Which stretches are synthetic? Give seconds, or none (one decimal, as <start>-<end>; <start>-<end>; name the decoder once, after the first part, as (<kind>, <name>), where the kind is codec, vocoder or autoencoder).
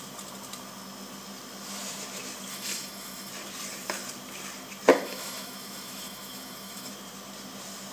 2.5-3.3 (autoencoder, DAC-VAE); 4.9-6.9